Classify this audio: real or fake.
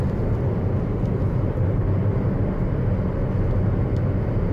real